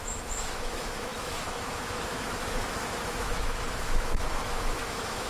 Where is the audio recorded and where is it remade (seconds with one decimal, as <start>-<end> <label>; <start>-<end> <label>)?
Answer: 0.0-5.3 remade